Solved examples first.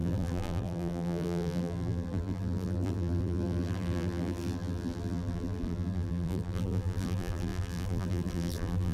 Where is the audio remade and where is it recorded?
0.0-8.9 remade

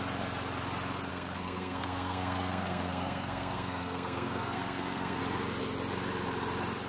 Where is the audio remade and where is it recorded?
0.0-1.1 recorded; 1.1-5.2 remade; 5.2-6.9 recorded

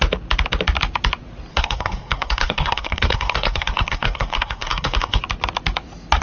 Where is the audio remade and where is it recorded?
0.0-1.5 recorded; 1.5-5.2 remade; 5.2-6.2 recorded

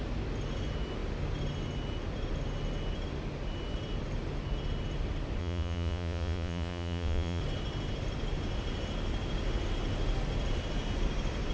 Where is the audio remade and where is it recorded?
0.0-5.4 recorded; 5.4-7.4 remade; 7.4-11.5 recorded

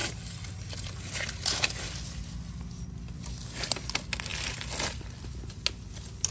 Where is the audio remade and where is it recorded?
0.0-6.3 recorded

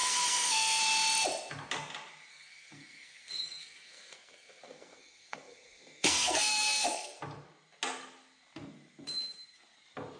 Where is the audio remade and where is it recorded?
0.0-0.8 remade; 0.8-2.3 recorded; 2.3-7.2 remade; 7.2-10.2 recorded